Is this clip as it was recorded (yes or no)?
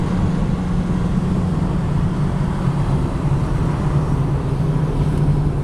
yes